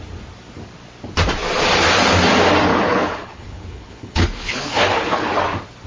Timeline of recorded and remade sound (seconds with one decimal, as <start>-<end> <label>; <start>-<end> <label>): 0.0-2.7 recorded; 2.7-5.3 remade; 5.3-5.9 recorded